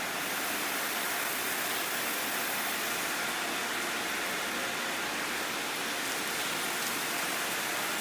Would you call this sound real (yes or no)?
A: yes